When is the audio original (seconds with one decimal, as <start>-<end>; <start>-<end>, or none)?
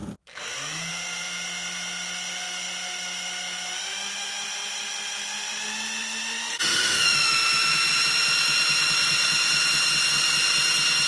0.0-6.5; 7.3-11.1